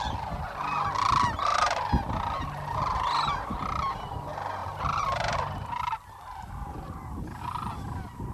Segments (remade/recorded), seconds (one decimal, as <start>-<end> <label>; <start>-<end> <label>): 0.0-4.6 recorded; 4.6-5.7 remade; 5.7-8.3 recorded